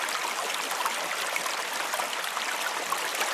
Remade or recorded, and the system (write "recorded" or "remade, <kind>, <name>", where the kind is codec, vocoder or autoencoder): recorded